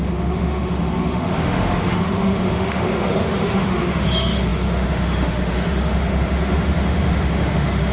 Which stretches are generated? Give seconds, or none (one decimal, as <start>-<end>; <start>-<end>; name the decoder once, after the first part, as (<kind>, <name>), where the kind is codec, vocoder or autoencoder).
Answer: 0.0-7.9 (autoencoder, DAC-VAE)